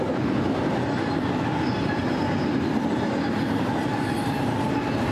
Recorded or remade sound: recorded